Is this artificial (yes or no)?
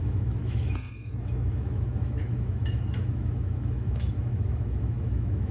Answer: yes